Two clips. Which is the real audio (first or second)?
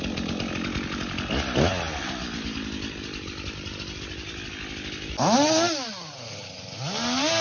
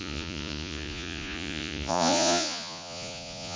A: first